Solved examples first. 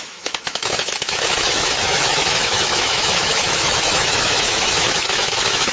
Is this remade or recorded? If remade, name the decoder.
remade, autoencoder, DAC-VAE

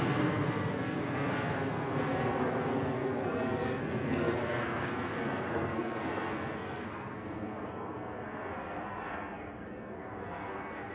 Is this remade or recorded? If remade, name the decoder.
remade, codec, SNAC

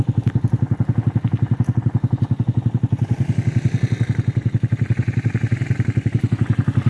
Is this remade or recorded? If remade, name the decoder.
recorded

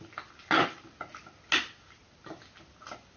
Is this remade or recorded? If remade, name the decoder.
recorded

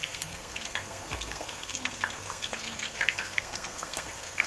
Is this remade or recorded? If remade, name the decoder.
remade, codec, SNAC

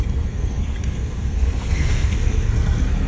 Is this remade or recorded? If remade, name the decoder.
remade, codec, SNAC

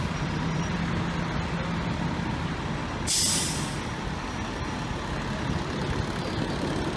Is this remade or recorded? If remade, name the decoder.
recorded